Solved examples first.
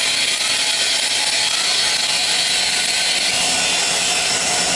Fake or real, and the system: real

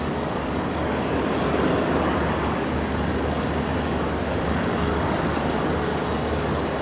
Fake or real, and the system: fake, codec, DAC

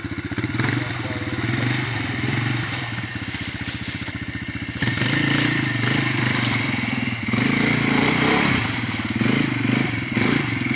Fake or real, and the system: fake, vocoder, BigVGAN v2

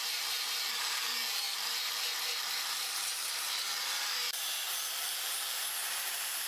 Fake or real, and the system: fake, vocoder, BigVGAN v2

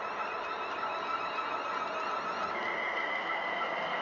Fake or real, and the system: real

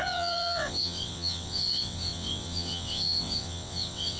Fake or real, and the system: fake, vocoder, WaveNeXt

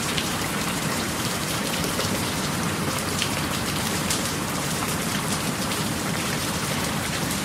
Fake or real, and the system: fake, vocoder, BigVGAN v2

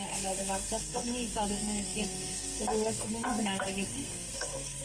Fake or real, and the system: fake, codec, SNAC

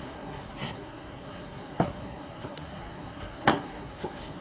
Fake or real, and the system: fake, codec, SNAC